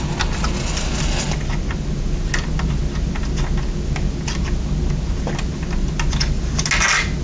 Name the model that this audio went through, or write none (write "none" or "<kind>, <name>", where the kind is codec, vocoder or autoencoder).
none